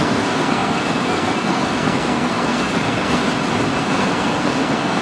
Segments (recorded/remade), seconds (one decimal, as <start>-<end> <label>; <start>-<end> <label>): 0.0-3.2 remade; 3.2-3.8 recorded; 3.8-5.0 remade